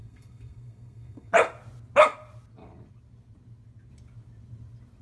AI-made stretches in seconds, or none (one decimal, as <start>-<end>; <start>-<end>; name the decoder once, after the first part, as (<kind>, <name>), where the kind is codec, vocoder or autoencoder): 0.0-1.3 (codec, SNAC)